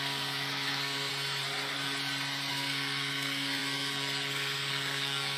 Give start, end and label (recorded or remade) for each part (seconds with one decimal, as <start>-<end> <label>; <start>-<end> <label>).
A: 0.0-1.1 remade; 1.1-2.5 recorded; 2.5-5.4 remade